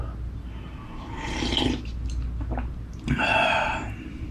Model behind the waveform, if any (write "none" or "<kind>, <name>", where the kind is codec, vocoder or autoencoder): none